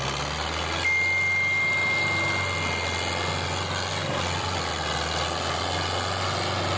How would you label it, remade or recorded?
recorded